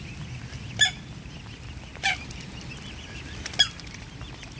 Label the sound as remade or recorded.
recorded